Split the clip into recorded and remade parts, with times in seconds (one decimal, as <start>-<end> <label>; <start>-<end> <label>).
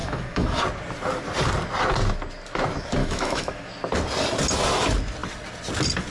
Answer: 0.0-0.6 remade; 0.6-3.0 recorded; 3.0-3.7 remade; 3.7-6.1 recorded